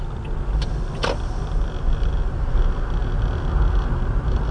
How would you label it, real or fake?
real